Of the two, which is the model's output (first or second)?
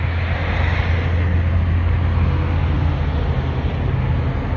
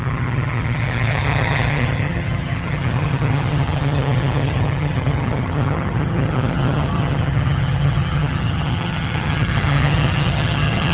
second